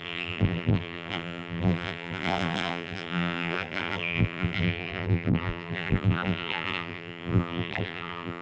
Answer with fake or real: fake